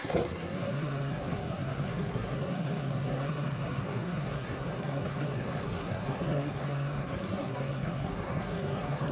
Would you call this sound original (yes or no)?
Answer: no